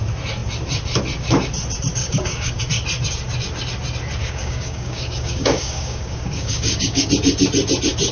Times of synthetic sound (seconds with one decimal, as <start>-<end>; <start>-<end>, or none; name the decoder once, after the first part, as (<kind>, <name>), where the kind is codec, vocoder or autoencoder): 2.0-2.6 (codec, DAC); 4.2-7.1